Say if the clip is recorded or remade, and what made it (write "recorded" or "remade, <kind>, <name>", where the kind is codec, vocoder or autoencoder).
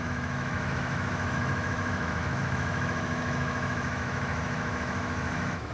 remade, autoencoder, DAC-VAE